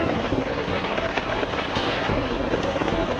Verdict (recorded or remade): remade